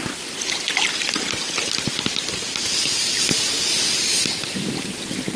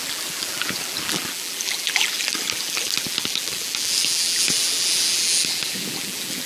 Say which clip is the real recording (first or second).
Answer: first